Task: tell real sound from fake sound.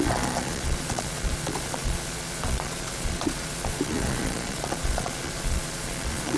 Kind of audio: fake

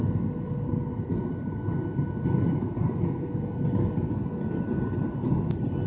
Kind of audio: real